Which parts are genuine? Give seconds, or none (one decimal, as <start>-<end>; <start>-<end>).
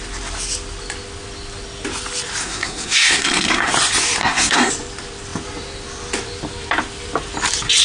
0.0-2.4; 3.7-4.2; 4.7-7.8